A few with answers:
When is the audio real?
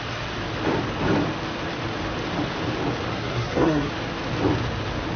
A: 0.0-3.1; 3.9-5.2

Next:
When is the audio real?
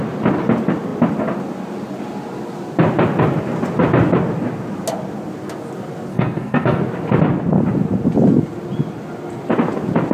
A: 0.0-6.1; 6.8-10.1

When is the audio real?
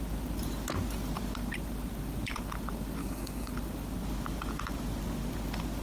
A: 0.0-3.0; 3.5-5.8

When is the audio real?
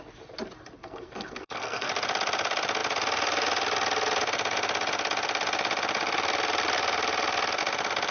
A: 0.0-0.8; 1.9-8.1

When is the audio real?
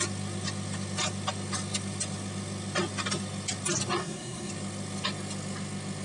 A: 0.0-4.0; 4.5-6.0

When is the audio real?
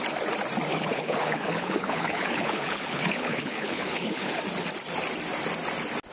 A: 0.0-0.7; 4.4-6.1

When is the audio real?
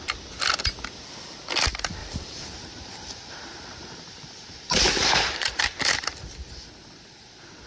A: 0.0-2.0; 5.6-7.7